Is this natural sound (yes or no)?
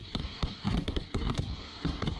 no